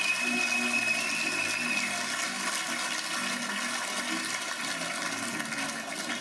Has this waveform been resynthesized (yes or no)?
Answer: no